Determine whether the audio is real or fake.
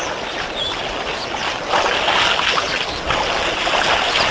real